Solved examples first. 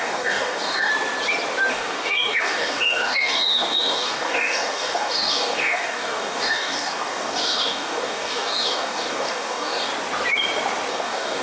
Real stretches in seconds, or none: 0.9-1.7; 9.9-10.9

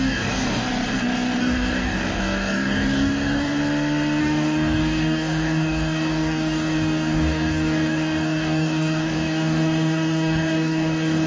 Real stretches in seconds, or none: 0.6-1.4; 3.6-4.2

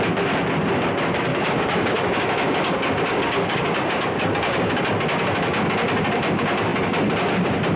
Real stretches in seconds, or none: 0.0-1.3; 4.8-7.8